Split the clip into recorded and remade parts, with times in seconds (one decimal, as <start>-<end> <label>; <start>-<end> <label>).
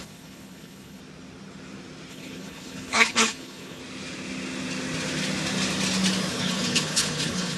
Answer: 0.0-1.0 remade; 1.0-2.1 recorded; 2.1-3.8 remade; 3.8-6.3 recorded; 6.3-7.6 remade